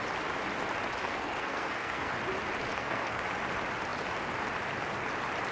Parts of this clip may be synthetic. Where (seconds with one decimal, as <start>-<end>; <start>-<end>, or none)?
1.0-2.1; 2.7-3.2